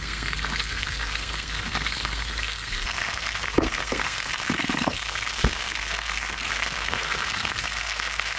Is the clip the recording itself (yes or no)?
no